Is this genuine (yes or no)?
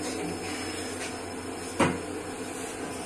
yes